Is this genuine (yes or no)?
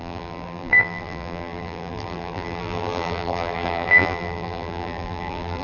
no